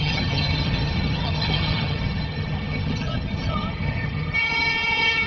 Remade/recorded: remade